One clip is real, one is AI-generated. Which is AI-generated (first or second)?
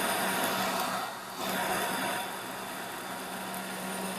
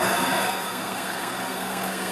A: second